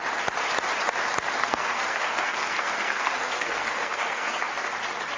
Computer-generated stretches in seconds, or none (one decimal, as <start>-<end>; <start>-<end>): 1.4-4.5